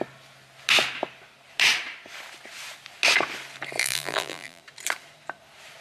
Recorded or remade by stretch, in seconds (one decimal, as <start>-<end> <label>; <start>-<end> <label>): 0.0-3.8 recorded; 3.8-4.6 remade; 4.6-5.8 recorded